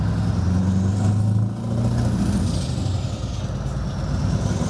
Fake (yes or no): no